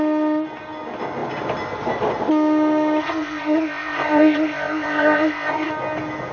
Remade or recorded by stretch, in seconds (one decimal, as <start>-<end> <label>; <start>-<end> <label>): 0.0-3.0 recorded; 3.0-5.7 remade; 5.7-6.3 recorded